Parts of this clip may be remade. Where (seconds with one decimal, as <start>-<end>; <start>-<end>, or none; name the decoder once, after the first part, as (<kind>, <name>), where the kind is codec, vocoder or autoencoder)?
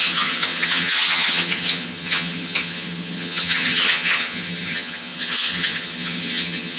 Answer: 0.0-6.8 (vocoder, HiFi-GAN)